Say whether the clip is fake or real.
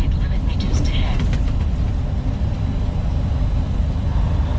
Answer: real